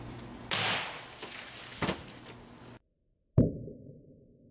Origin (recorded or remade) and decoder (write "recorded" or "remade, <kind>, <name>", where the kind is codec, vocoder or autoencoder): recorded